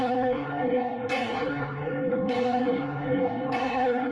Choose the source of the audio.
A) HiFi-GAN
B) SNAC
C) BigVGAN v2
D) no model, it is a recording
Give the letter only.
B